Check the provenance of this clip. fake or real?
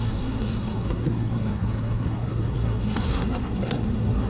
fake